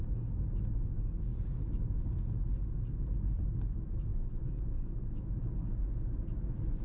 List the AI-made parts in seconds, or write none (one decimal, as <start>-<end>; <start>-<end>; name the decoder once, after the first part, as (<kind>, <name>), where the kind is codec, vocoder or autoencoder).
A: none